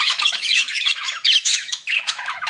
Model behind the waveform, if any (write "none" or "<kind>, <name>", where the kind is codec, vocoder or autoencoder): autoencoder, DAC-VAE